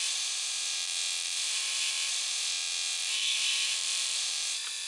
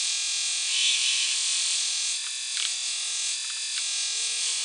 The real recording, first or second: second